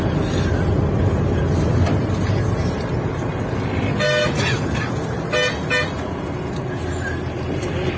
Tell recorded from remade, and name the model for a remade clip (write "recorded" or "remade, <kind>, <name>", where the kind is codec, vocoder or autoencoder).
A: recorded